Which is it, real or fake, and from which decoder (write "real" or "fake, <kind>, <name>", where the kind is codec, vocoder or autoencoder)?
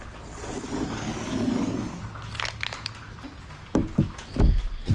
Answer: real